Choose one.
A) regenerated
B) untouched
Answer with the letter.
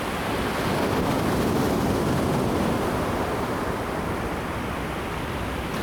A